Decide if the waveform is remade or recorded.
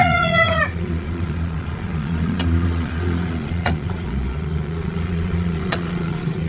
remade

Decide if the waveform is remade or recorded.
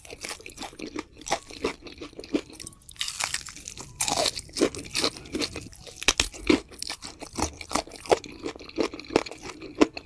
recorded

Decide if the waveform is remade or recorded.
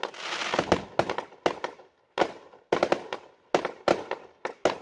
recorded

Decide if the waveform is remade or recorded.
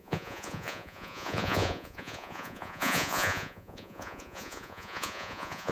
remade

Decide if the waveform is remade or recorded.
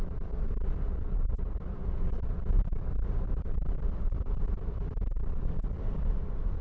recorded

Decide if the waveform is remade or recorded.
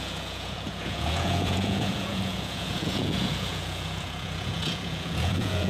remade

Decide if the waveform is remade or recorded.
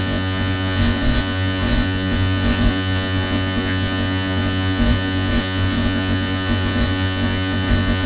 remade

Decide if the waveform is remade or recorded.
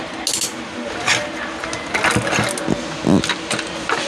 recorded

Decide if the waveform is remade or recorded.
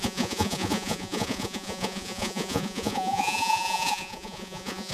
remade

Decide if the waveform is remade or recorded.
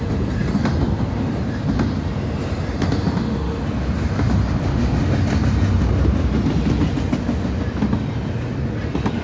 recorded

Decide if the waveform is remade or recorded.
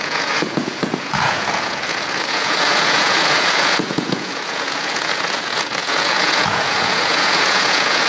remade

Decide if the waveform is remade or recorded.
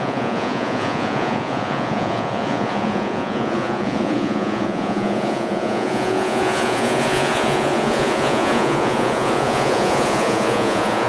remade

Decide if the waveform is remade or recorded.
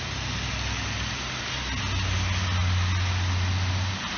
recorded